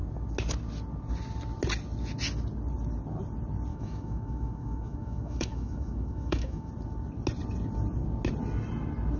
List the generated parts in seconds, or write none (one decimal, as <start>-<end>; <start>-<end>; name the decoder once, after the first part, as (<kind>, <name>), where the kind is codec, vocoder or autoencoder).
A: 3.7-6.7 (autoencoder, DAC-VAE)